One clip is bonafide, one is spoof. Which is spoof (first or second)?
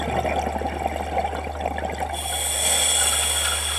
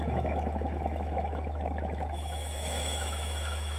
second